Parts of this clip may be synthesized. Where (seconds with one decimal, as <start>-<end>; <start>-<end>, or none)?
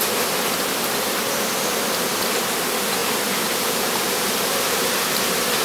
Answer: none